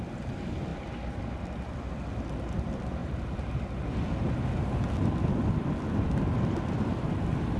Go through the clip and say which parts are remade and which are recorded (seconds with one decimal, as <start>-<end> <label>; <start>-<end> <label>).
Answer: 0.0-3.0 recorded; 3.0-3.5 remade; 3.5-7.6 recorded